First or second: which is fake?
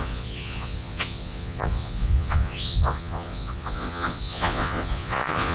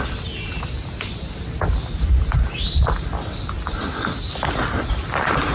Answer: first